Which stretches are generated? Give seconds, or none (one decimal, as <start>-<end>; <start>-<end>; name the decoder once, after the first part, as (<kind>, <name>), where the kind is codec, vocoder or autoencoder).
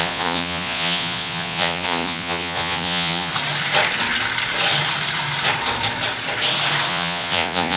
0.0-3.3 (vocoder, Vocos); 6.9-7.8